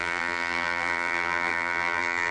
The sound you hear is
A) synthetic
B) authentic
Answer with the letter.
A